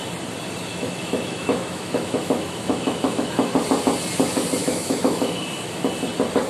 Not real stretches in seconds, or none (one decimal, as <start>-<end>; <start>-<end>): 0.7-3.5; 4.6-5.9